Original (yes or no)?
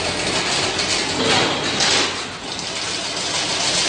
yes